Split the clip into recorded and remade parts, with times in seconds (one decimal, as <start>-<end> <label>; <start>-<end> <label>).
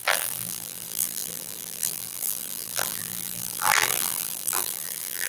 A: 0.0-5.3 remade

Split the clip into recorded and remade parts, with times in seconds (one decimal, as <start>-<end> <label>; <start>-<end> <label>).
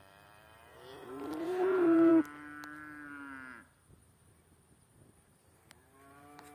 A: 0.0-2.1 remade; 2.1-4.0 recorded; 4.0-6.5 remade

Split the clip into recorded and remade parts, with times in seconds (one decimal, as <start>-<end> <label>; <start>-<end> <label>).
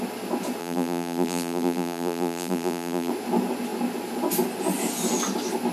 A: 0.0-0.6 recorded; 0.6-3.1 remade; 3.1-5.7 recorded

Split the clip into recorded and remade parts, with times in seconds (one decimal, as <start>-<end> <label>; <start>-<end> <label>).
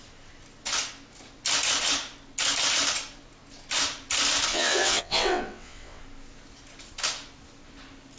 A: 0.0-4.5 recorded; 4.5-6.0 remade; 6.0-8.2 recorded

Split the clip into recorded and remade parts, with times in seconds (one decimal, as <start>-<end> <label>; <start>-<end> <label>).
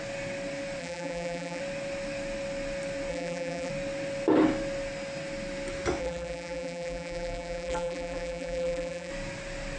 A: 0.0-0.8 recorded; 0.8-1.6 remade; 1.6-3.1 recorded; 3.1-3.7 remade; 3.7-6.0 recorded; 6.0-9.1 remade; 9.1-9.8 recorded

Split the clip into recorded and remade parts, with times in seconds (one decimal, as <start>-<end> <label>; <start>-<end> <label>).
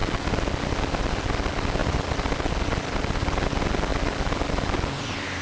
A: 0.0-1.8 recorded; 1.8-3.0 remade; 3.0-5.4 recorded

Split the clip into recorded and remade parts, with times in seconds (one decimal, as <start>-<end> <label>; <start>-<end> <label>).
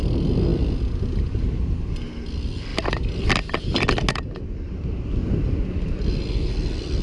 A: 0.0-2.7 recorded; 2.7-3.3 remade; 3.3-7.0 recorded